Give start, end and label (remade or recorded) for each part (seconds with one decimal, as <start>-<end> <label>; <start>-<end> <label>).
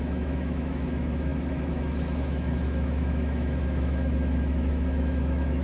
0.0-5.6 remade